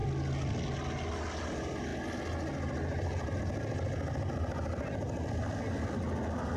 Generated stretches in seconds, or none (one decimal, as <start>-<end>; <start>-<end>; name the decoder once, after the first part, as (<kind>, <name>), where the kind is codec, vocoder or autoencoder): none